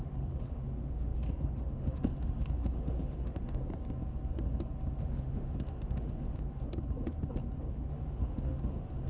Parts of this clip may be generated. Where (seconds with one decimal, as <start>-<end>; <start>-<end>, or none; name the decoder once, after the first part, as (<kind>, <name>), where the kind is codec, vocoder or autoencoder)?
0.0-3.6 (autoencoder, DAC-VAE); 5.0-6.7; 7.6-9.1